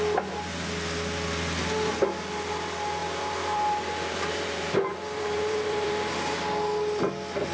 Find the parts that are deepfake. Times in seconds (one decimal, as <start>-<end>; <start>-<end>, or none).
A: 3.0-6.0